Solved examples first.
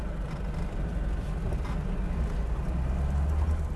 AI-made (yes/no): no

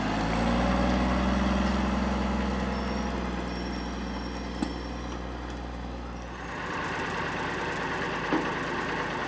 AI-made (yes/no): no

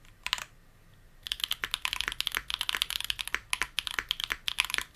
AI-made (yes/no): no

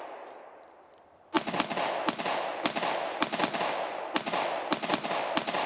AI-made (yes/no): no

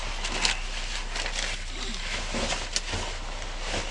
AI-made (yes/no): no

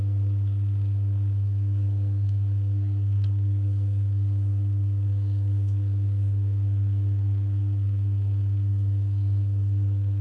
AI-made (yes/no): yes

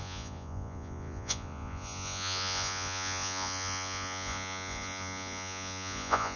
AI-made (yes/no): yes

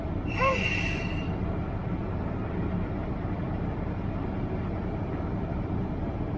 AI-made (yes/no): yes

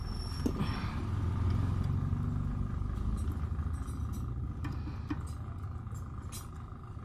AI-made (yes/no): no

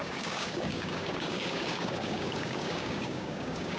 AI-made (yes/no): yes